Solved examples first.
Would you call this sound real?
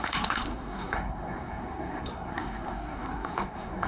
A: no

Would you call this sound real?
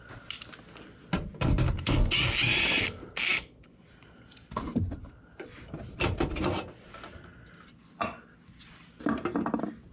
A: yes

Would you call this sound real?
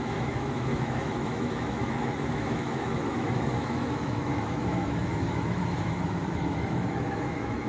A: no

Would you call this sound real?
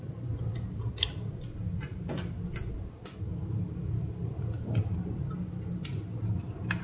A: yes